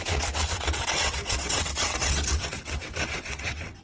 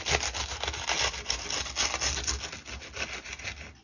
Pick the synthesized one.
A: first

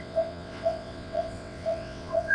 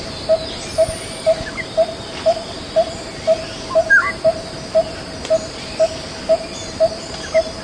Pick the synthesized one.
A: first